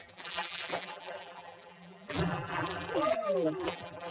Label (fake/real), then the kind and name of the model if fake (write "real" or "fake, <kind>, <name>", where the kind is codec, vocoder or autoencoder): fake, vocoder, BigVGAN v2